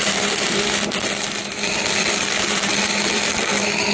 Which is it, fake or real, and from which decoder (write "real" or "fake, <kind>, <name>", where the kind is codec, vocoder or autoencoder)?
fake, vocoder, BigVGAN v2